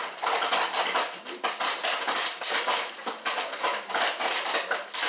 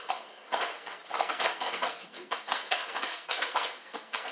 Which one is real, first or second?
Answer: first